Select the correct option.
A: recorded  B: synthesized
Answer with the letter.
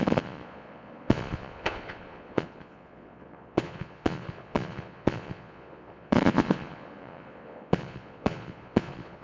B